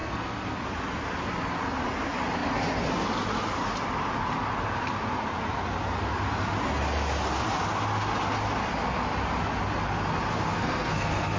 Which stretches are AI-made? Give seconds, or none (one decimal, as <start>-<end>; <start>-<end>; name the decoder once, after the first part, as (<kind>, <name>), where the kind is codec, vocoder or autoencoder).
0.0-0.6 (codec, SNAC); 10.3-11.4